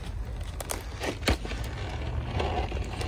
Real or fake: real